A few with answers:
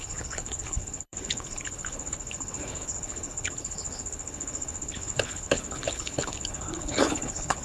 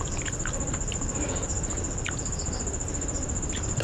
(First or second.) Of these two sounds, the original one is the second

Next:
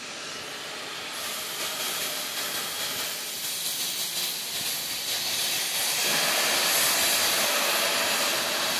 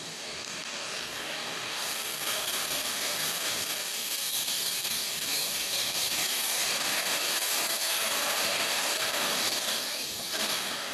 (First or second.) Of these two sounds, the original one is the first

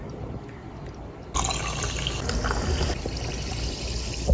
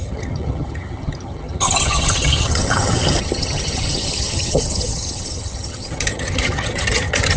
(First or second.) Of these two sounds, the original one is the first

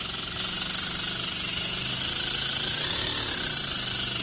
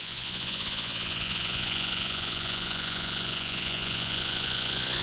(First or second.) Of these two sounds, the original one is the first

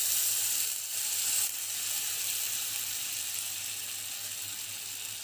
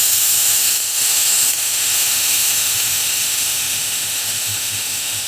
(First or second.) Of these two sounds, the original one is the first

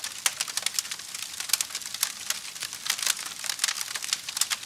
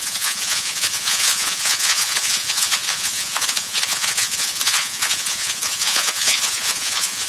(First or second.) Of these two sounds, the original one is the first